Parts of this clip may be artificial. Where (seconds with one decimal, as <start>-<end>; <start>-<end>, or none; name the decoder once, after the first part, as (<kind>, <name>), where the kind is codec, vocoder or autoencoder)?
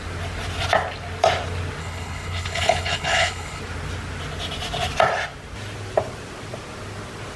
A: 1.8-3.6 (codec, HILCodec)